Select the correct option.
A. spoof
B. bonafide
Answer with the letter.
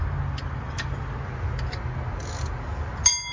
B